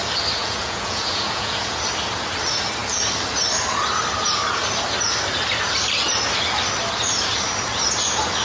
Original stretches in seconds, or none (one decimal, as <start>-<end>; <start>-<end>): 0.0-0.4; 1.8-8.4